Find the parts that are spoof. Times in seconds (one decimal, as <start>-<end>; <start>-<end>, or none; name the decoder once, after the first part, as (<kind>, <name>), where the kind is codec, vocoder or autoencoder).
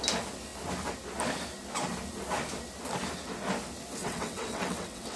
4.0-5.2 (vocoder, WaveNeXt)